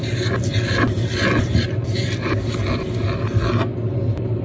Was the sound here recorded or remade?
recorded